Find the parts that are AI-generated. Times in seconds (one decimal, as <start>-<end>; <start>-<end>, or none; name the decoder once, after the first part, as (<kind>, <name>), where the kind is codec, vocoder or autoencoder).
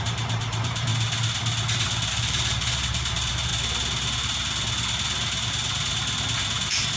0.0-0.9 (vocoder, BigVGAN v2); 2.1-3.5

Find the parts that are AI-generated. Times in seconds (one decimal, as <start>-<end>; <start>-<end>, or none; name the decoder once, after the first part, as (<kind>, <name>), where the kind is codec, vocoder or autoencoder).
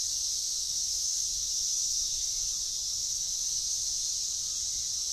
0.5-2.3 (autoencoder, DAC-VAE); 2.9-4.2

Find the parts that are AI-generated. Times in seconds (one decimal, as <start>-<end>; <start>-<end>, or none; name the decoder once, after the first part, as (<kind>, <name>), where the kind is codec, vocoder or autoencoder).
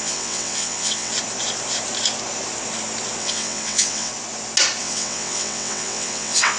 0.0-1.1 (vocoder, WaveNeXt); 3.2-4.1; 4.8-6.6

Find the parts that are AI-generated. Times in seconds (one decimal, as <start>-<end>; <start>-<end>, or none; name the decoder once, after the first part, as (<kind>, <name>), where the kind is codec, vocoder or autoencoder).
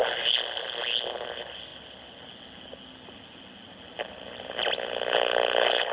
none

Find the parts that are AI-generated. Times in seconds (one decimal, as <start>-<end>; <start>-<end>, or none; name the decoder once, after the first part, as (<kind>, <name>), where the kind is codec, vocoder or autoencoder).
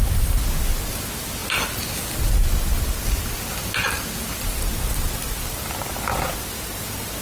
none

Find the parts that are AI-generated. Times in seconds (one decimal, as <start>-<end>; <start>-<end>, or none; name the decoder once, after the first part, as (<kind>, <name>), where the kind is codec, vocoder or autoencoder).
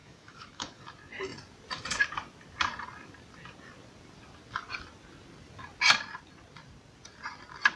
0.0-0.8 (autoencoder, DAC-VAE)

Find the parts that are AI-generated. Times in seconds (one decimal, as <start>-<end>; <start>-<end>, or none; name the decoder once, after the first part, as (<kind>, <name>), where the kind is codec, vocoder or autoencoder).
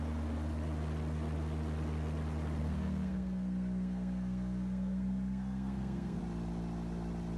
2.6-6.2 (codec, SNAC)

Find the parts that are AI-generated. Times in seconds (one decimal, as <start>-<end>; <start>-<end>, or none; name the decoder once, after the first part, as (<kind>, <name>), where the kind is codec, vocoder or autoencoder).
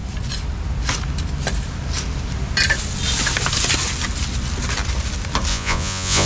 5.5-6.3 (vocoder, Vocos)